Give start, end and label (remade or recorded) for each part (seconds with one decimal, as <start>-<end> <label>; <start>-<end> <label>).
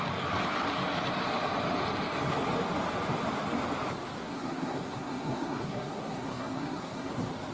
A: 0.0-4.2 recorded; 4.2-7.1 remade; 7.1-7.5 recorded